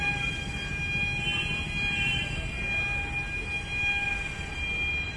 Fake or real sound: real